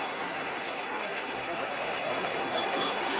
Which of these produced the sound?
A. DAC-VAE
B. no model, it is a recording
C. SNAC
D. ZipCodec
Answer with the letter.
C